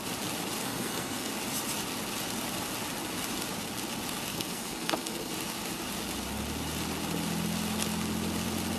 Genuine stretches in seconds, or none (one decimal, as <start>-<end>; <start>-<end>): 0.0-0.6; 1.3-4.3; 5.3-8.8